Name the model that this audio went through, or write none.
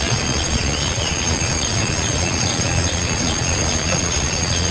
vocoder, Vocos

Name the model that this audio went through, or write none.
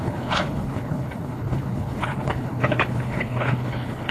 codec, HILCodec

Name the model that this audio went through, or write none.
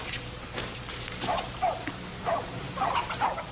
vocoder, BigVGAN v2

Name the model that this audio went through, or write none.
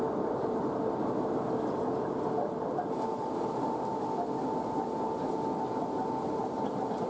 none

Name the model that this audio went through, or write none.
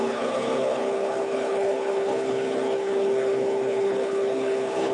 codec, HILCodec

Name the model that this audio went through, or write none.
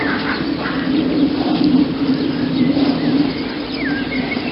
none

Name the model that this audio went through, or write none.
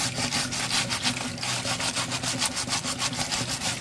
none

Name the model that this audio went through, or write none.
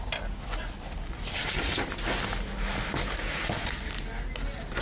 none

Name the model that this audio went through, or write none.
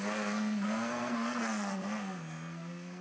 codec, SNAC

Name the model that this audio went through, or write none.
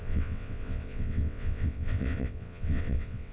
vocoder, WaveNeXt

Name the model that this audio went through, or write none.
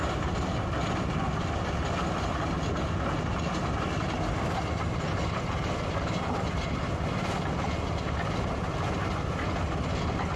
none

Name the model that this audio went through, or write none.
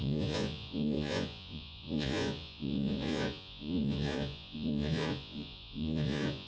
vocoder, Vocos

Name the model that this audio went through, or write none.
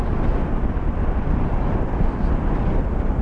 none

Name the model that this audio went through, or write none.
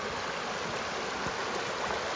none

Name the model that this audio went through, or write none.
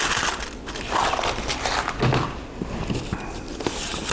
none